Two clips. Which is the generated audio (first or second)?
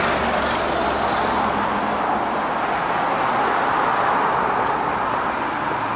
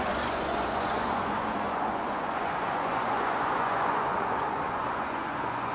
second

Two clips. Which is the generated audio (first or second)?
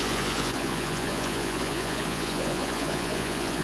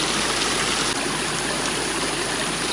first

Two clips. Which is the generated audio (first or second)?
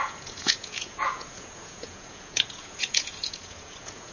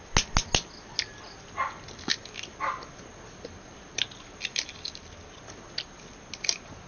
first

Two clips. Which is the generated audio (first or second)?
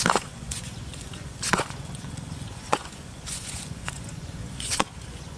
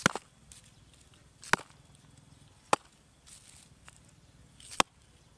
first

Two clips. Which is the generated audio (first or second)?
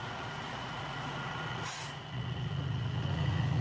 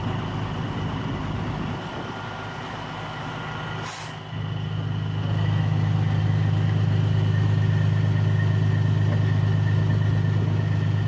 first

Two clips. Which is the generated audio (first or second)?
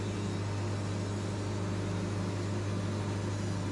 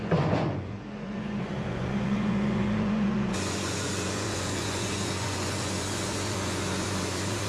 second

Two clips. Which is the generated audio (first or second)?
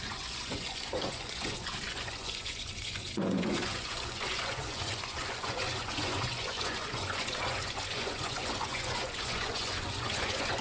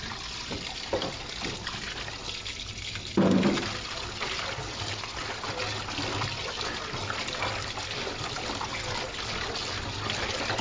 first